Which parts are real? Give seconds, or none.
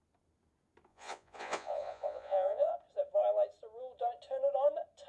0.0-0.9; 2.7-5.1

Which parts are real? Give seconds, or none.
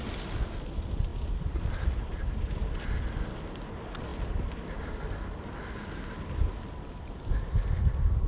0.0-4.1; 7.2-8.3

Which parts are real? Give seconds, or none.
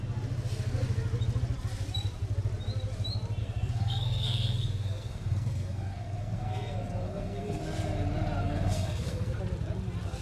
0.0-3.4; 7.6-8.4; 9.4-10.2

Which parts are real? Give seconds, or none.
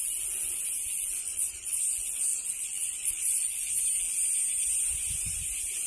0.0-1.2; 1.8-2.3; 3.8-5.9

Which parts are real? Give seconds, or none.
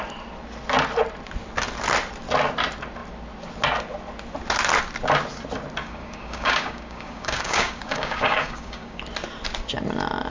0.0-5.8; 9.0-10.3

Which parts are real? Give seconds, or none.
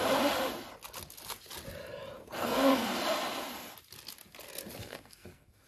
0.0-2.2; 2.9-4.8